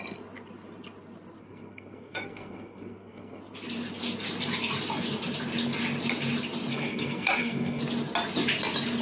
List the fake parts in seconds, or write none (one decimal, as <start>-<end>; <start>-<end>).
1.4-3.4; 6.7-7.8